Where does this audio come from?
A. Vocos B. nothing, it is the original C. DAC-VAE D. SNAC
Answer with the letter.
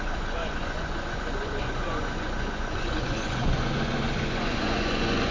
A